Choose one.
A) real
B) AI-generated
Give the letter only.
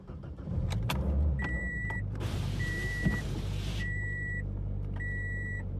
B